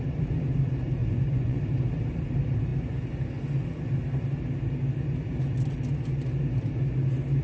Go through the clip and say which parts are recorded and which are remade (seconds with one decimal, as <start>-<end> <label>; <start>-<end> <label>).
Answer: 0.0-1.0 recorded; 1.0-1.6 remade; 1.6-7.4 recorded